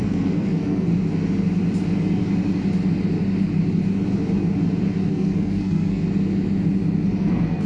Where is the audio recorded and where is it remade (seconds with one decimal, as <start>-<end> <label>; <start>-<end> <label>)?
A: 0.0-0.9 remade; 0.9-5.1 recorded; 5.1-6.0 remade; 6.0-7.2 recorded; 7.2-7.7 remade